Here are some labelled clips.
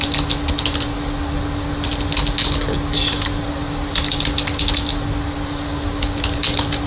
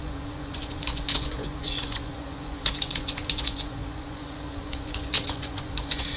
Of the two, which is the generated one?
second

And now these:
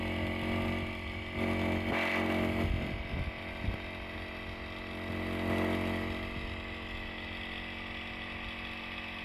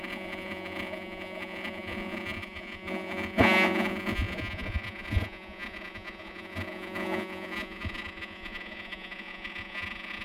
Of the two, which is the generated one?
second